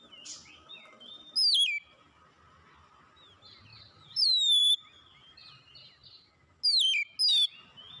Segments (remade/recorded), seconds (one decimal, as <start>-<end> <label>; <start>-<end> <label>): 0.0-3.7 recorded; 3.7-6.3 remade; 6.3-8.0 recorded